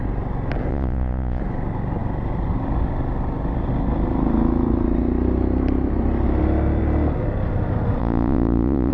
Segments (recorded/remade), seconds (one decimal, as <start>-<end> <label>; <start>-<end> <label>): 0.0-0.7 recorded; 0.7-1.4 remade; 1.4-8.0 recorded; 8.0-8.9 remade